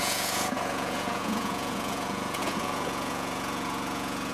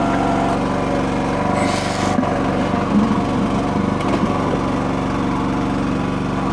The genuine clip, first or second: second